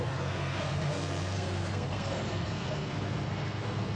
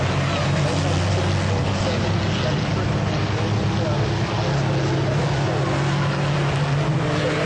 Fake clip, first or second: first